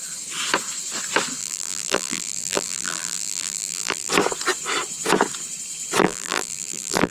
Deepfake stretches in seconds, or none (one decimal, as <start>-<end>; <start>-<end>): 1.4-4.1; 6.0-7.1

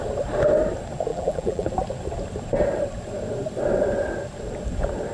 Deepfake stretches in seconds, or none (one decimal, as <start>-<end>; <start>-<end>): 1.1-1.7